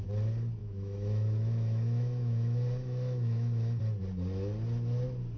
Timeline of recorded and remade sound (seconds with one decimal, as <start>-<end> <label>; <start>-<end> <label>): 0.0-0.6 recorded; 0.6-3.8 remade; 3.8-5.4 recorded